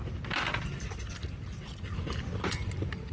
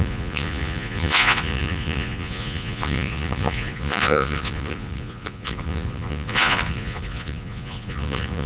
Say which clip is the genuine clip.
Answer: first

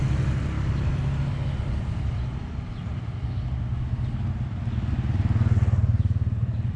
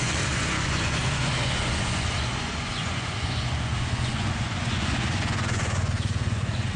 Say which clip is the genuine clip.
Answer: first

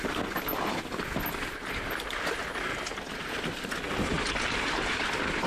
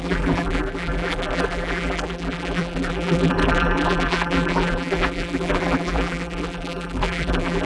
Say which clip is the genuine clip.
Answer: first